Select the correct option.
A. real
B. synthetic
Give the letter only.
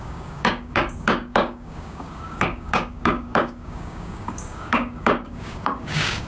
B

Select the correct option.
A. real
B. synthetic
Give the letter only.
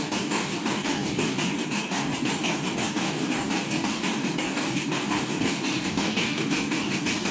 B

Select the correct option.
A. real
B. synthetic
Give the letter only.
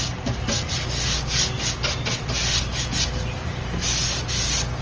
A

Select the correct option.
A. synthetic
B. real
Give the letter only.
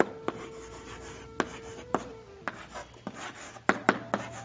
B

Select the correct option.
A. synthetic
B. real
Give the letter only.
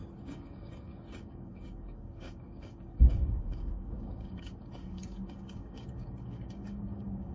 A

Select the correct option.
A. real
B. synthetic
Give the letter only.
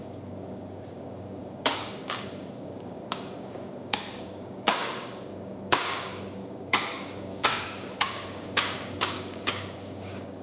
B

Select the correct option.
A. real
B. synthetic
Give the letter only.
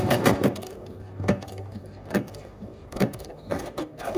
B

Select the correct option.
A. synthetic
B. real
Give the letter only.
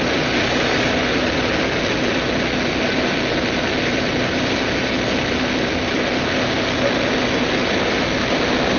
B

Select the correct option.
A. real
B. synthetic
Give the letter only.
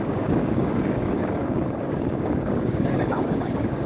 B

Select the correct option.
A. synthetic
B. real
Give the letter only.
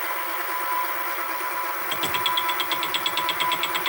B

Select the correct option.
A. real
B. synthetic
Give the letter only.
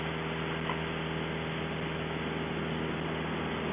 A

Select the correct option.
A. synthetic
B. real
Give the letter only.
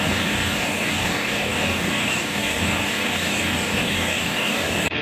A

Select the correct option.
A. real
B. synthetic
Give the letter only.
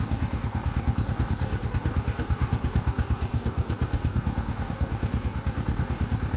B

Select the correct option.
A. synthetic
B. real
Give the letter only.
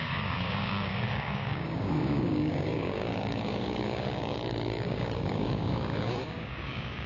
A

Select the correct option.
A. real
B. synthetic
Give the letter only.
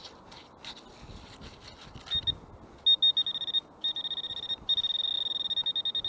A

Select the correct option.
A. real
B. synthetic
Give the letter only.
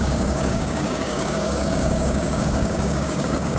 B